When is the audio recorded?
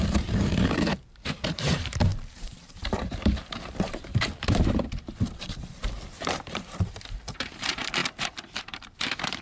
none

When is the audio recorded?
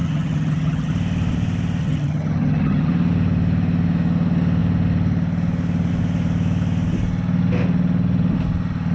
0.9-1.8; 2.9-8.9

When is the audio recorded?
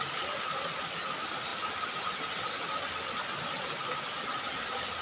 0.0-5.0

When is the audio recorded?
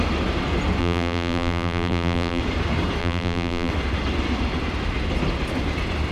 0.0-0.8; 2.4-3.0; 3.7-6.1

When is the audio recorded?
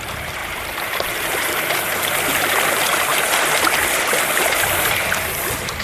0.0-0.4; 1.7-5.8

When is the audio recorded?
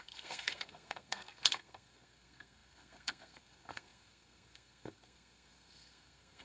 none